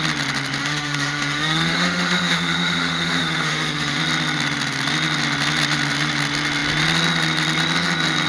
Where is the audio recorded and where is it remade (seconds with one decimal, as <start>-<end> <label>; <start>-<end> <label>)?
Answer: 0.0-0.6 recorded; 0.6-4.0 remade; 4.0-8.3 recorded